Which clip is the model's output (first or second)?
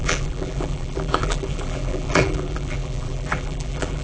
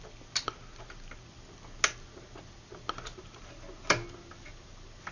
first